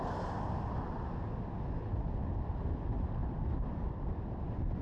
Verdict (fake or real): real